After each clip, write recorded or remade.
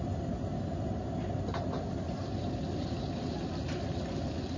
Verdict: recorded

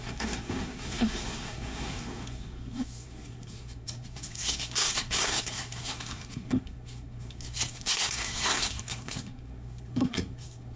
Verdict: remade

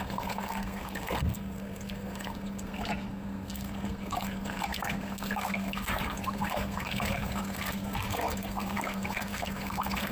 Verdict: remade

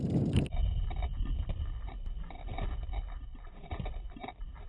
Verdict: recorded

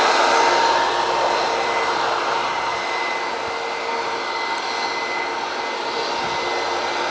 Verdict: recorded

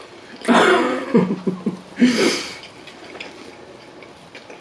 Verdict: recorded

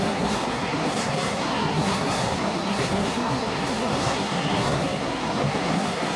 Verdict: remade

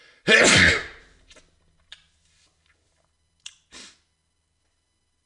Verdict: recorded